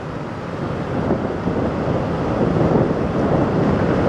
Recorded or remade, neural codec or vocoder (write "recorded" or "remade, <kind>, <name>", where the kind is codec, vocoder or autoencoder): recorded